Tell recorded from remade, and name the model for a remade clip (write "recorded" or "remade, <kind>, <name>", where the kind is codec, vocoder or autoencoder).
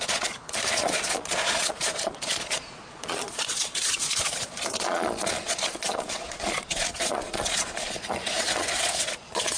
remade, vocoder, Vocos